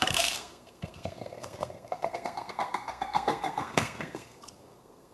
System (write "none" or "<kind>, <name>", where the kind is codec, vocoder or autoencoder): codec, SNAC